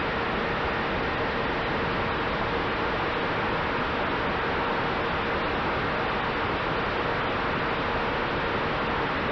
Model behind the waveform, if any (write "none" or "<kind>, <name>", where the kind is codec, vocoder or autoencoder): none